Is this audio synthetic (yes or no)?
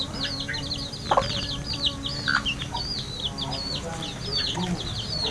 no